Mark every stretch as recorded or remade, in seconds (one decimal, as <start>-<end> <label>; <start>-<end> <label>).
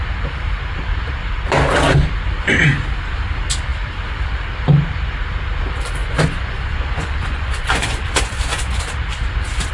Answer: 0.0-6.0 recorded; 6.0-8.8 remade; 8.8-9.7 recorded